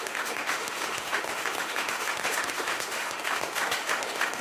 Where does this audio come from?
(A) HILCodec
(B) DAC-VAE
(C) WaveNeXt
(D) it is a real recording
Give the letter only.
B